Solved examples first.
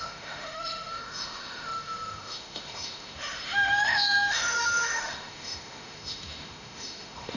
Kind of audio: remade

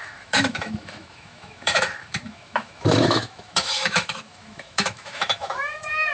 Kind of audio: remade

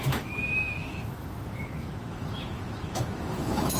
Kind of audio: remade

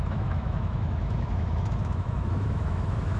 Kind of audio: remade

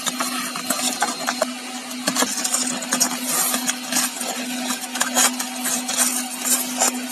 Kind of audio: recorded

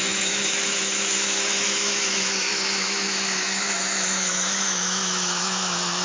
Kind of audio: remade